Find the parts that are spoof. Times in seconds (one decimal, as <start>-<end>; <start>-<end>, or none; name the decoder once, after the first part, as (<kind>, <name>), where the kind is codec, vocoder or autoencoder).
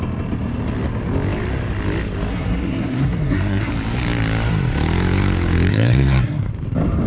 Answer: 2.3-3.7 (codec, SNAC); 5.7-6.5